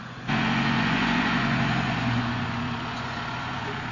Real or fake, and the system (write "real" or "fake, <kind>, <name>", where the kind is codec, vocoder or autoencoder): fake, vocoder, Vocos